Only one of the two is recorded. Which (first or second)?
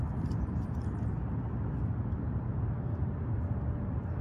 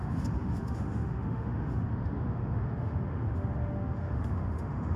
first